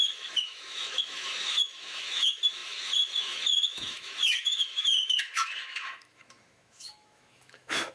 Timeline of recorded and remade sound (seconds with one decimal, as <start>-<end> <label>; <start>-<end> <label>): 0.0-7.9 remade